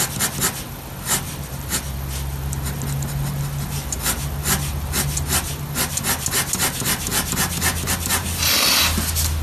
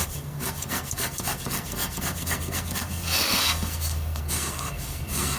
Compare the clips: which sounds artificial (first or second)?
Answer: second